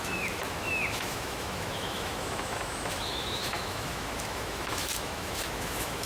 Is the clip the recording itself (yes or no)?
no